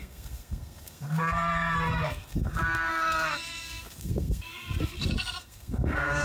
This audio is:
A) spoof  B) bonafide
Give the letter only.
A